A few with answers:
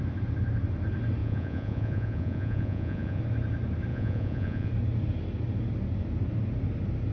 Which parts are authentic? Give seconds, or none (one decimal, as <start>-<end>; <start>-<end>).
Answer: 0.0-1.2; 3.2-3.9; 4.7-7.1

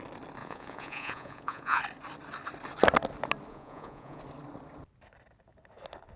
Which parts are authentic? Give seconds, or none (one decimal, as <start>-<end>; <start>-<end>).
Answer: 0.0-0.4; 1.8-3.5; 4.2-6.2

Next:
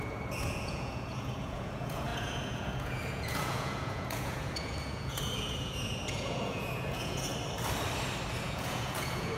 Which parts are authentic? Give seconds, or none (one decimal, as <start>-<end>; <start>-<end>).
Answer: 7.3-8.4

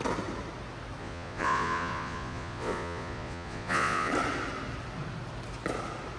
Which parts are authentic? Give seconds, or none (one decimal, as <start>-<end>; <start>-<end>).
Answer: 0.0-1.0; 4.1-6.2